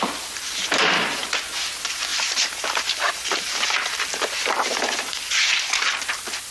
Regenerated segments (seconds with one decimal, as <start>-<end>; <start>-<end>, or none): 2.1-5.6